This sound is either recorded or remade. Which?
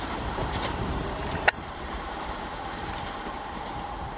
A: remade